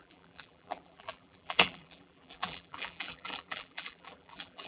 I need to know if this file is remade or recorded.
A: remade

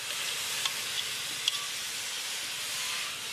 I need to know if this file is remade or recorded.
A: recorded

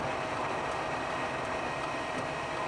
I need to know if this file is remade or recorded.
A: remade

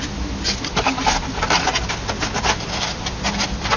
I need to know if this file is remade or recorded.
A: recorded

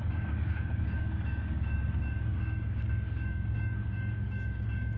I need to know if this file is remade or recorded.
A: remade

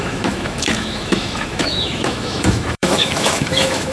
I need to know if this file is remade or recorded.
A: remade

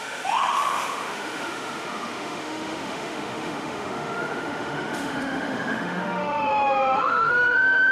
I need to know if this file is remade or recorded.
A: remade